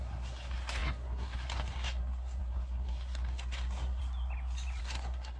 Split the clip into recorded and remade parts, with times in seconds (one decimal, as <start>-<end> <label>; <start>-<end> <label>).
0.0-4.0 remade; 4.0-4.8 recorded; 4.8-5.4 remade